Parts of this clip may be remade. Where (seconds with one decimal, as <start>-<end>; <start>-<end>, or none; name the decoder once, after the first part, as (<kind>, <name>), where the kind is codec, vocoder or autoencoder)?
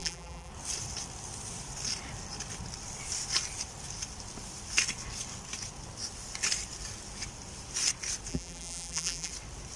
0.0-0.5 (vocoder, BigVGAN v2); 8.3-9.3